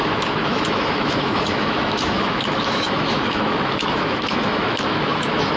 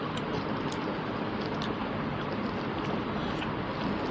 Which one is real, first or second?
second